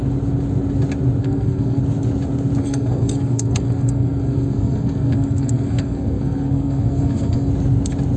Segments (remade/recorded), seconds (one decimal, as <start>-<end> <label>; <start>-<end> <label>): 0.0-1.2 recorded; 1.2-1.8 remade; 1.8-2.6 recorded; 2.6-7.5 remade; 7.5-8.2 recorded